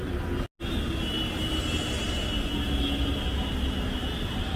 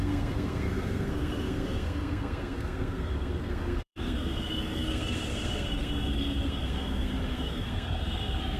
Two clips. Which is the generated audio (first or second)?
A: second